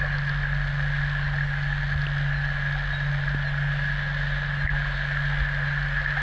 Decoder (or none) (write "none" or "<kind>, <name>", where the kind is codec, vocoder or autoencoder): none